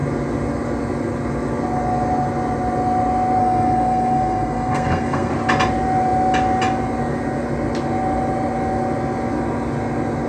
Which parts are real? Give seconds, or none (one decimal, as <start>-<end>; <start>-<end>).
0.0-3.4; 5.3-10.3